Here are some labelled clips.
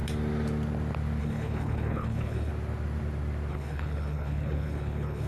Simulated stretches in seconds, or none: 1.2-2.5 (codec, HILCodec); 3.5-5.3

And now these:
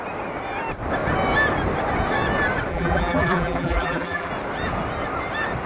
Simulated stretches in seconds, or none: 2.7-4.3 (vocoder, BigVGAN v2)

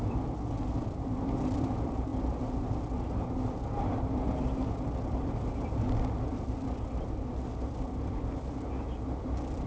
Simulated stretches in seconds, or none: 0.0-9.7 (vocoder, BigVGAN v2)